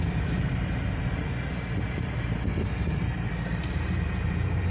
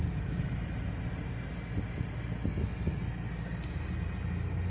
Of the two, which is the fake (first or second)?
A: first